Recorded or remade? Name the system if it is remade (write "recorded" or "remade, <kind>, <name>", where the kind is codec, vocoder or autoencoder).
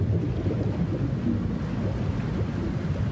recorded